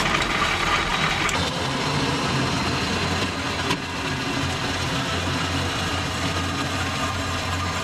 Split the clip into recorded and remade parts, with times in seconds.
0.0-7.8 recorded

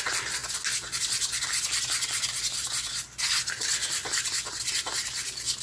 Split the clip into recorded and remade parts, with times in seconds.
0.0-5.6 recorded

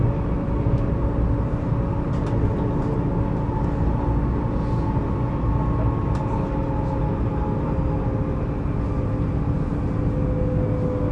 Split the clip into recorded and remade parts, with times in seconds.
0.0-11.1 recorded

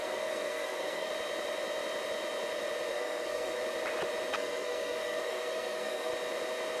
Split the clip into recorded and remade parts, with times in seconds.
0.0-1.1 remade; 1.1-2.9 recorded; 2.9-3.6 remade; 3.6-4.3 recorded; 4.3-6.1 remade; 6.1-6.8 recorded